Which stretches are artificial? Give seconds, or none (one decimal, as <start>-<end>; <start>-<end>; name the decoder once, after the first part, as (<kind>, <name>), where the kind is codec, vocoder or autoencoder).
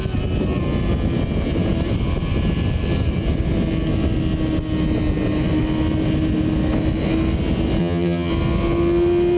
7.8-8.3 (vocoder, HiFi-GAN)